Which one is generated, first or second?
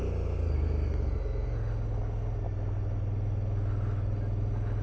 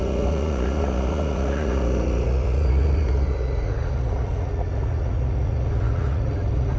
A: second